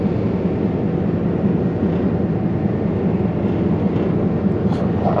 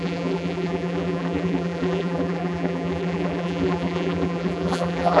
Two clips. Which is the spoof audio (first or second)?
second